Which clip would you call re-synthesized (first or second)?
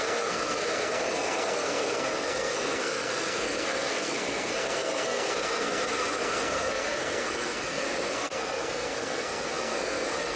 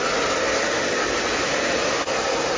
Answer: first